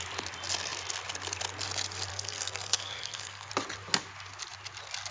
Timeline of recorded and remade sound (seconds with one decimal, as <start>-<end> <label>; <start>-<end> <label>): 0.0-2.1 recorded; 2.1-3.5 remade; 3.5-5.1 recorded